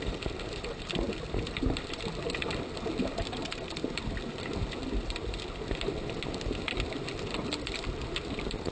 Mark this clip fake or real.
real